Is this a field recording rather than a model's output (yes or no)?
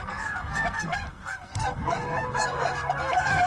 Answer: no